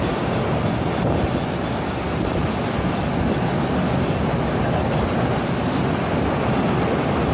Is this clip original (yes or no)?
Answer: yes